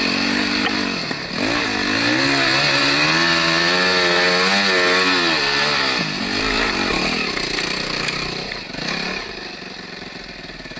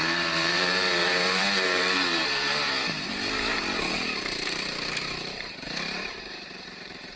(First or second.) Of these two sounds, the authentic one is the first